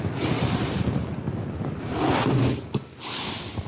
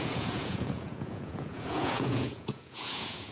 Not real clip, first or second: second